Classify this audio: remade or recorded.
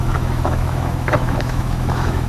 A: remade